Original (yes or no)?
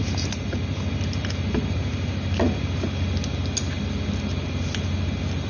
yes